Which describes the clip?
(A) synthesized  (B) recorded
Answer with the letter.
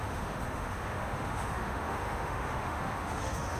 A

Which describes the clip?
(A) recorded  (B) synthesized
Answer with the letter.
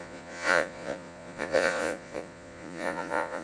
B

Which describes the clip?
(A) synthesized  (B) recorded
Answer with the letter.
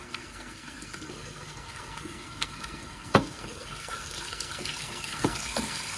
A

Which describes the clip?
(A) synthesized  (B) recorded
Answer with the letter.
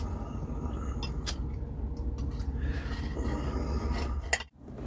B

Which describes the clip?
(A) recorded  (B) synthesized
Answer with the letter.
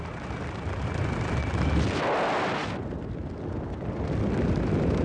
A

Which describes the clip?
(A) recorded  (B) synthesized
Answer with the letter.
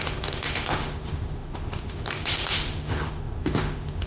B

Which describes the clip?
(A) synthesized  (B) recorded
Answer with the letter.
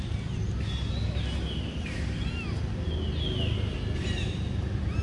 B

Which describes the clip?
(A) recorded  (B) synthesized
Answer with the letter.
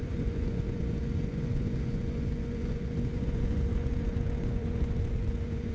B